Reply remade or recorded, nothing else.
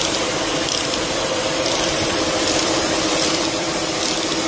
remade